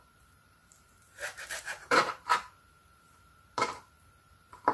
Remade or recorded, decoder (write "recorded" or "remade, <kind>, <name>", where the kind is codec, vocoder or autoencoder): remade, vocoder, BigVGAN v2